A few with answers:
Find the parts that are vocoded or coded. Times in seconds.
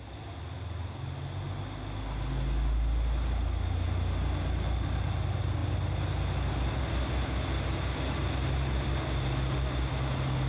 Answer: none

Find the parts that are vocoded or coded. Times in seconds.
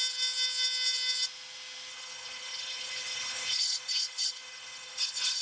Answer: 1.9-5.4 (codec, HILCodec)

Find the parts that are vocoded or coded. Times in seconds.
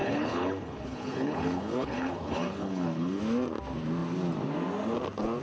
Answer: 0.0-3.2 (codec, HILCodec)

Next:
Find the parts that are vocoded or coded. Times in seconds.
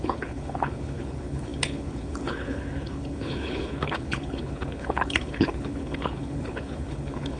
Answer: 0.0-7.4 (codec, HILCodec)